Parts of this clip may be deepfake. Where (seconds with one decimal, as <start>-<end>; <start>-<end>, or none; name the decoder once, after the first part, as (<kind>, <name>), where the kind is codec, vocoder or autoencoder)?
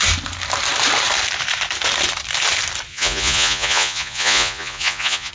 2.9-5.3 (vocoder, Vocos)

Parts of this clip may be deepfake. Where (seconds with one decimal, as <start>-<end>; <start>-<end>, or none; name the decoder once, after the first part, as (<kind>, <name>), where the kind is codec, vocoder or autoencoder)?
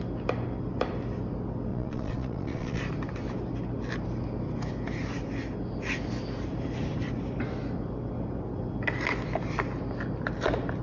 1.7-2.8 (vocoder, Vocos)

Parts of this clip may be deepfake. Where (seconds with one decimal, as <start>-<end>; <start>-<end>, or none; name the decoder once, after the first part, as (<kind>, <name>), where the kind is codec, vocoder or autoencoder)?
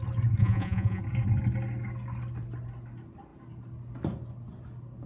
0.4-1.0 (vocoder, Vocos)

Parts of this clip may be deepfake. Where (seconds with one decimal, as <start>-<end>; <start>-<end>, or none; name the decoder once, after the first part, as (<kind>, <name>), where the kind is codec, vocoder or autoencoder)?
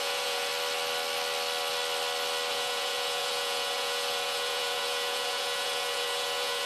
0.0-0.5 (vocoder, Vocos); 2.5-6.7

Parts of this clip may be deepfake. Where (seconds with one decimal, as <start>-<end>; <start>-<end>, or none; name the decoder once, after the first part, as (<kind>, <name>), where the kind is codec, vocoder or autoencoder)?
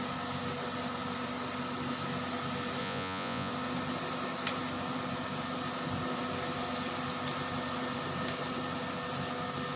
2.8-3.5 (vocoder, Vocos)